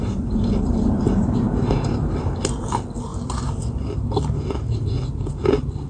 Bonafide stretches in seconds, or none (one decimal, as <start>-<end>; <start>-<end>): 2.3-5.9